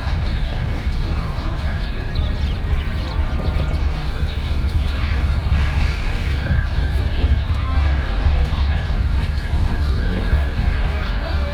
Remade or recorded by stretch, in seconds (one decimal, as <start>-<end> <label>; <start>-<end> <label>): 0.0-2.1 remade; 2.1-3.8 recorded; 3.8-11.5 remade

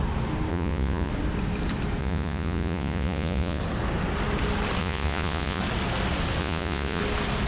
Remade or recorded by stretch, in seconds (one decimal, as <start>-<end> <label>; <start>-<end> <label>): 0.0-0.5 recorded; 0.5-1.1 remade; 1.1-2.0 recorded; 2.0-3.6 remade; 3.6-4.8 recorded; 4.8-5.6 remade; 5.6-6.4 recorded; 6.4-7.0 remade; 7.0-7.5 recorded

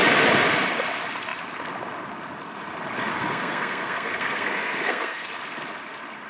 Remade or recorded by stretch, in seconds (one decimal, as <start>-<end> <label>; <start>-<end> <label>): 0.0-3.1 recorded; 3.1-5.3 remade; 5.3-6.3 recorded

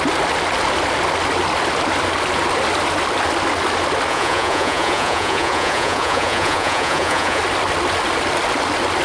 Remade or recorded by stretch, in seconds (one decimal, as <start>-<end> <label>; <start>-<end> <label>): 0.0-4.1 recorded; 4.1-7.4 remade; 7.4-9.0 recorded